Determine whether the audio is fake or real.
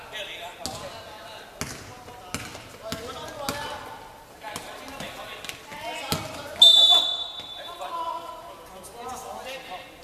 real